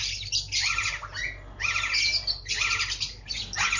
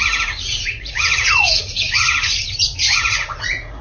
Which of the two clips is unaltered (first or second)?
first